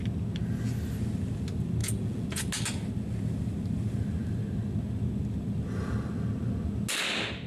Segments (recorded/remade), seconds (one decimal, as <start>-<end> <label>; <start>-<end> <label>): 0.0-1.8 recorded; 1.8-2.4 remade; 2.4-7.5 recorded